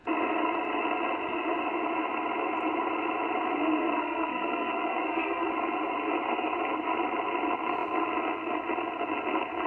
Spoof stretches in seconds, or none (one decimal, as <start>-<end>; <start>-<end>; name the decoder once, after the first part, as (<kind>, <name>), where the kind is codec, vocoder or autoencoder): 4.0-5.5 (codec, SNAC)